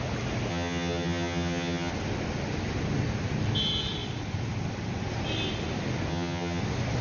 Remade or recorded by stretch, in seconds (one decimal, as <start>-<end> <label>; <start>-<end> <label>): 0.0-0.5 recorded; 0.5-1.9 remade; 1.9-6.1 recorded; 6.1-6.6 remade; 6.6-7.0 recorded